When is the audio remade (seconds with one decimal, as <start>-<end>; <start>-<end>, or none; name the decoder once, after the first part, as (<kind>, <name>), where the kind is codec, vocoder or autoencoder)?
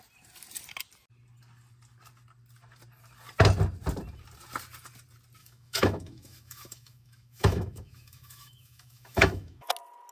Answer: 5.4-9.7 (autoencoder, DAC-VAE)